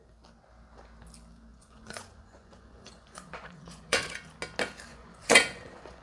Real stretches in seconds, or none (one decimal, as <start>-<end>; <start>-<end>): 0.0-1.5; 4.1-4.9